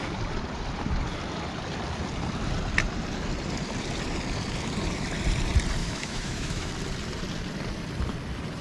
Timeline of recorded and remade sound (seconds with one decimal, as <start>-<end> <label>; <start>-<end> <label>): 0.0-5.8 recorded; 5.8-6.7 remade; 6.7-8.6 recorded